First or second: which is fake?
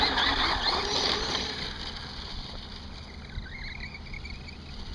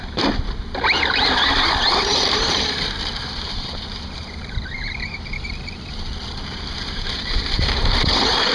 second